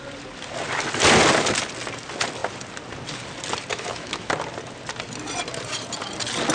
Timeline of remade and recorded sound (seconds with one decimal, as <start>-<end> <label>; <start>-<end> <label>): 0.0-3.7 recorded; 3.7-4.3 remade; 4.3-6.5 recorded